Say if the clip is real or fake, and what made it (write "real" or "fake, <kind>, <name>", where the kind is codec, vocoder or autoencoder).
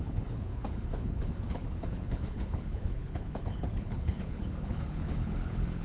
fake, codec, HILCodec